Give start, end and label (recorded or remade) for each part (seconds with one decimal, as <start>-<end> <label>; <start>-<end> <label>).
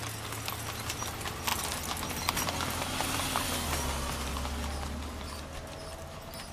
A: 0.0-6.5 recorded